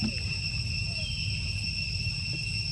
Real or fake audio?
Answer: real